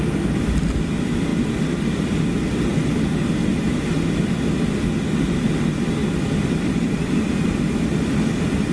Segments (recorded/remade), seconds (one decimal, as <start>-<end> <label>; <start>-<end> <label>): 0.0-8.7 recorded